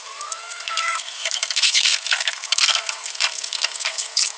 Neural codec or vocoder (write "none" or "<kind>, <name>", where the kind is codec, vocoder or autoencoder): codec, SNAC